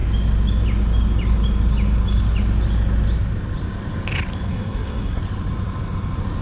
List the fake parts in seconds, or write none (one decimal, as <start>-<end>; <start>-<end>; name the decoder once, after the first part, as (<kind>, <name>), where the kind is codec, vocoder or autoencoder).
4.5-5.2 (codec, SNAC)